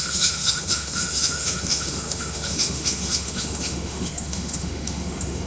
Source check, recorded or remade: remade